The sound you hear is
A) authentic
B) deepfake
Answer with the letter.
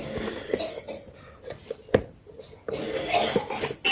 A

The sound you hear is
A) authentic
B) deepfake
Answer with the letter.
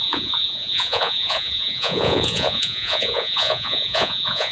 B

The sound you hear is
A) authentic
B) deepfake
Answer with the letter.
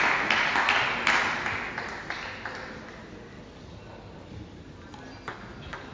A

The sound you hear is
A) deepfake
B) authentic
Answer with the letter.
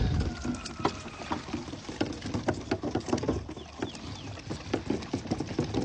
B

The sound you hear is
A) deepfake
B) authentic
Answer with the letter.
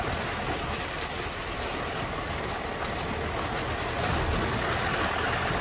B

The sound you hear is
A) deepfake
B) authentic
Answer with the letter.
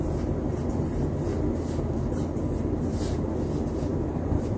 B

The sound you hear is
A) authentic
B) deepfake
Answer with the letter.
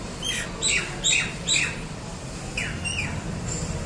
A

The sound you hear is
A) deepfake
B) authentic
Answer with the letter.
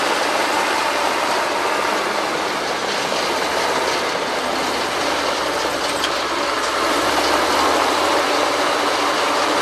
B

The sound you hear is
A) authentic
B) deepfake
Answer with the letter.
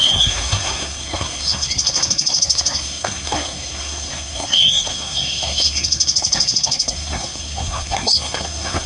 B